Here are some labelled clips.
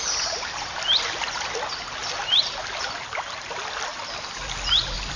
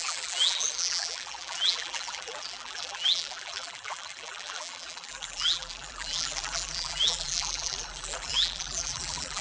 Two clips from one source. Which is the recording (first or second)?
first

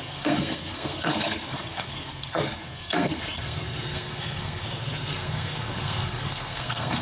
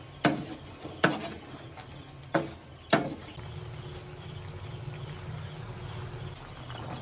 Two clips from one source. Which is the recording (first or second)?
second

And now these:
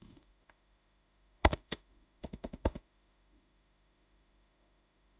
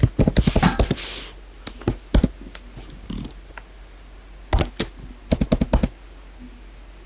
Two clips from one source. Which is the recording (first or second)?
second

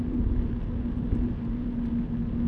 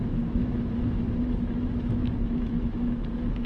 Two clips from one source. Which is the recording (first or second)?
first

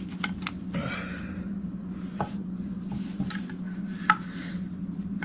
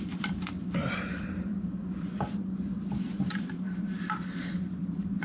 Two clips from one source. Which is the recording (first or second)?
first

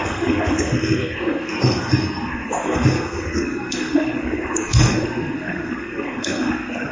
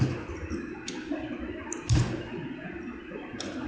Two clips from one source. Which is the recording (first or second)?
second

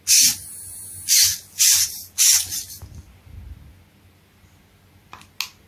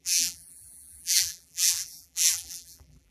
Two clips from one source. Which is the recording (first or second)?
first